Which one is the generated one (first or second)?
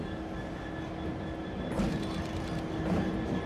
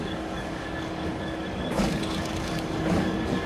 second